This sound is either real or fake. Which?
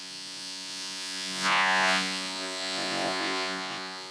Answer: fake